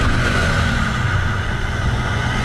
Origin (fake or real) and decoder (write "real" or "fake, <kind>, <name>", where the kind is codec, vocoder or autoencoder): fake, vocoder, Vocos